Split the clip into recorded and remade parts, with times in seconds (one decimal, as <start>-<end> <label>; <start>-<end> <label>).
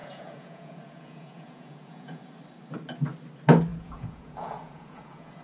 0.0-2.2 remade; 2.2-3.7 recorded; 3.7-5.4 remade